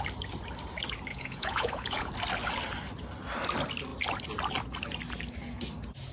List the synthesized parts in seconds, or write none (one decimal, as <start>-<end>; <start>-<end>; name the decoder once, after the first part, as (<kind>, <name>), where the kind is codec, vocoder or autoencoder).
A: 1.1-2.1 (vocoder, Vocos)